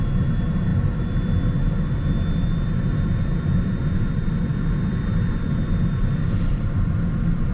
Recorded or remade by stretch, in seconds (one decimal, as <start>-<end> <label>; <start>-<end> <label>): 0.0-7.5 recorded